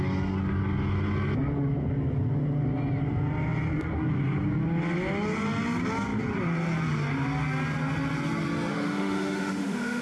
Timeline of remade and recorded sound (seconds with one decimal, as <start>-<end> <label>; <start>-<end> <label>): 0.0-8.7 recorded; 8.7-10.0 remade